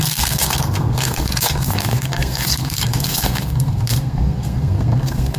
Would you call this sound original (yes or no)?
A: no